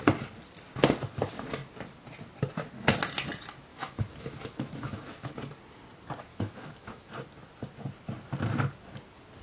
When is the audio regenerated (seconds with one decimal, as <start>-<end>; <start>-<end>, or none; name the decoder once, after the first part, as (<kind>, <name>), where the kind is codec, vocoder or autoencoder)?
3.7-5.1 (autoencoder, DAC-VAE); 6.3-7.1